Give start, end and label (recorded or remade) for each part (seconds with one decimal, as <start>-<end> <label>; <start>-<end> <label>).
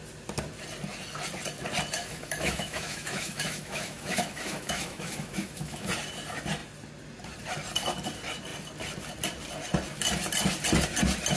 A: 0.0-2.0 recorded; 2.0-5.9 remade; 5.9-11.4 recorded